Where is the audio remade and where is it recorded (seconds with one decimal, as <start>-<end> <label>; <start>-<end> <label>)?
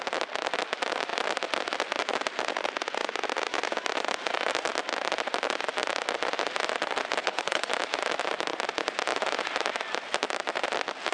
0.0-7.2 recorded; 7.2-7.7 remade; 7.7-11.1 recorded